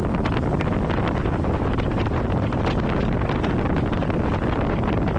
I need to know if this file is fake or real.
real